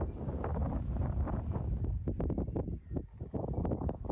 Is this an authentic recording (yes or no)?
yes